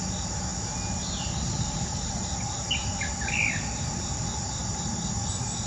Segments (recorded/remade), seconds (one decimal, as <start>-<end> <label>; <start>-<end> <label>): 0.0-5.7 recorded